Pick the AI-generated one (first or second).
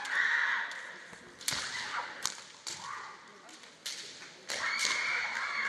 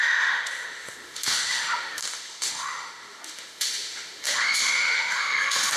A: second